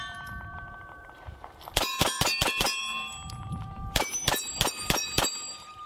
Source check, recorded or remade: remade